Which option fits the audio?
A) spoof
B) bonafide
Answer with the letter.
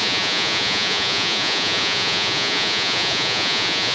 A